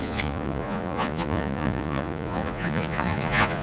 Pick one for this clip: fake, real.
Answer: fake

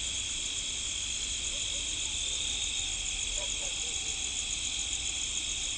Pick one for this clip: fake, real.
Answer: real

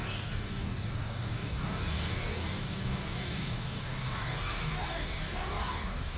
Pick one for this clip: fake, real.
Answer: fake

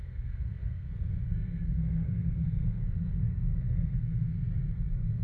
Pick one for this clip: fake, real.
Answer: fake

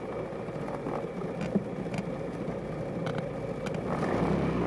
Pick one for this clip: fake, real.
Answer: real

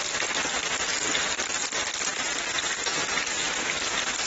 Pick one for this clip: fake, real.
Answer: real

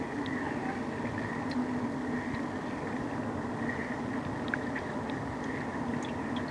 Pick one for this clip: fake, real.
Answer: real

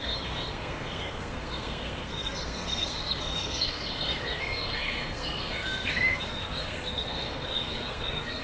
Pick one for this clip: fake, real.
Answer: fake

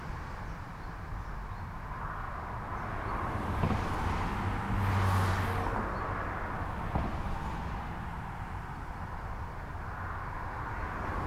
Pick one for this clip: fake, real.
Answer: real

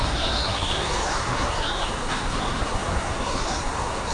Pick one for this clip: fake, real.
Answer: fake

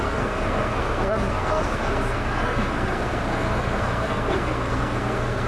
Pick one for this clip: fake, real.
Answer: fake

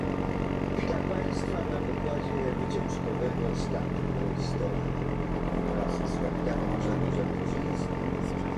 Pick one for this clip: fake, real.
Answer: real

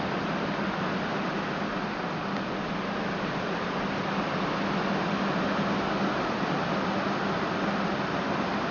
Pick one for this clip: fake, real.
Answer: real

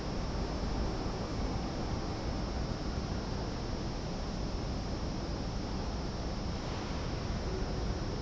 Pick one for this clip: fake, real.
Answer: real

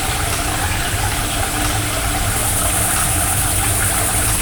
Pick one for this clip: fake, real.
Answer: real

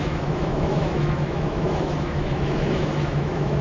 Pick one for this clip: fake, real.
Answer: fake